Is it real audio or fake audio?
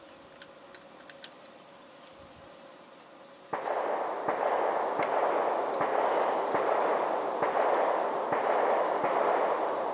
real